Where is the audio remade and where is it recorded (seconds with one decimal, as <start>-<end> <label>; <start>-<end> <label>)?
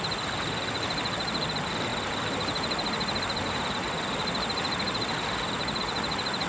0.0-6.5 recorded